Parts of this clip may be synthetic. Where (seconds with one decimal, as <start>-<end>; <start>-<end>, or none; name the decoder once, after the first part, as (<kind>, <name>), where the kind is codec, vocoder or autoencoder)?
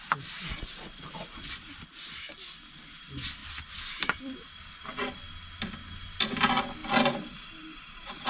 3.4-4.6 (vocoder, BigVGAN v2); 6.8-8.3